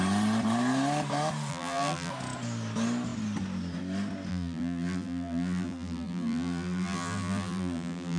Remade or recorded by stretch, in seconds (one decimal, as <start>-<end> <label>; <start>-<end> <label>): 0.0-1.5 recorded; 1.5-2.1 remade; 2.1-4.3 recorded; 4.3-8.2 remade